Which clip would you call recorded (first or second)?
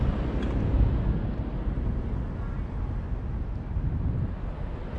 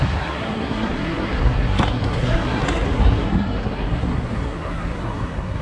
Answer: first